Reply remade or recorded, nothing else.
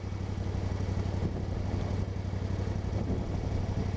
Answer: recorded